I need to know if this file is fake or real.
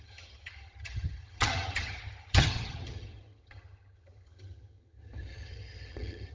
fake